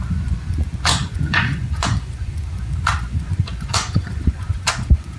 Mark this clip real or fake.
fake